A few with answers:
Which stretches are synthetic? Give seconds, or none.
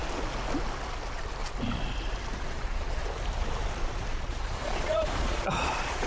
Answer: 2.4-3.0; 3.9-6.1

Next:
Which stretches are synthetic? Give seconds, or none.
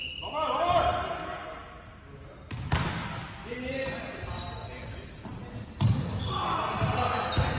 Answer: none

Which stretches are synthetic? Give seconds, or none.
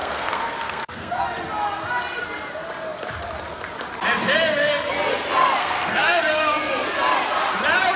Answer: 0.0-1.2; 5.6-6.2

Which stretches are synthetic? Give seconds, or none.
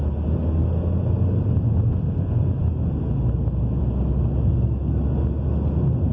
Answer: 4.5-5.0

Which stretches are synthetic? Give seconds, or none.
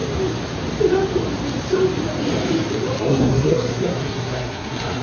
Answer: 3.0-5.0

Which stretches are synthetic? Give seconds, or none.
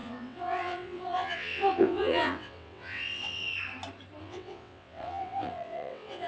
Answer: 0.0-3.5; 4.2-6.3